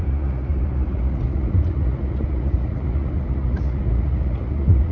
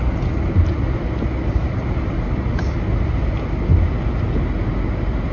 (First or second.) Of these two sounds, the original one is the second